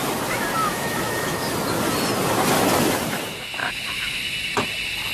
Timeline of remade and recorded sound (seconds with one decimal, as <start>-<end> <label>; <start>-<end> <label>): 0.0-0.6 recorded; 0.6-1.5 remade; 1.5-3.6 recorded; 3.6-4.2 remade; 4.2-5.1 recorded